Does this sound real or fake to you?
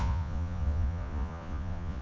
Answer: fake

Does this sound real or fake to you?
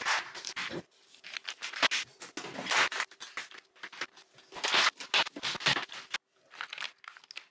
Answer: real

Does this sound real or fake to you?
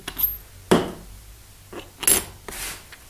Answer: real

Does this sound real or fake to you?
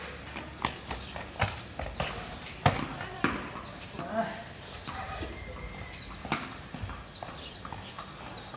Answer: real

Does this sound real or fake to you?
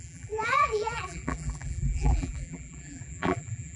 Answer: fake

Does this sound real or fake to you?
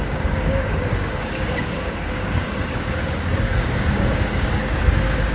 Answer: fake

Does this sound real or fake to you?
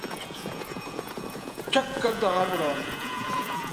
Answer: fake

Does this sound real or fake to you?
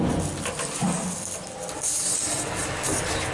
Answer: real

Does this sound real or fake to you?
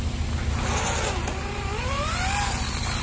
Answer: real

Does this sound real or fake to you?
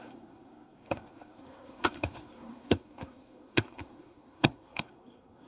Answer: fake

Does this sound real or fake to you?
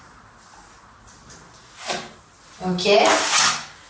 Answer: real